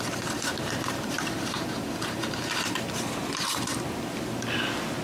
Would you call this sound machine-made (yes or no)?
yes